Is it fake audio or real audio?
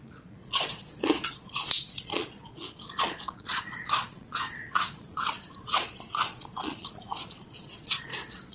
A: fake